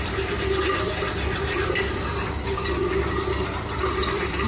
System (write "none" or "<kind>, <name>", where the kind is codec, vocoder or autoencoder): vocoder, BigVGAN v2